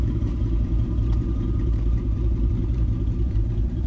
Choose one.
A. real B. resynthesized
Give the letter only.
B